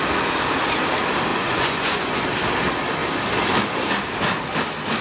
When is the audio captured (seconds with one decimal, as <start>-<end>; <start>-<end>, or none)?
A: 0.0-1.3; 2.2-5.0